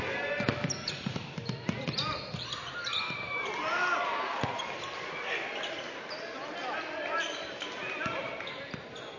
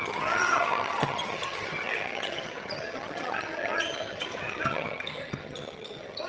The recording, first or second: first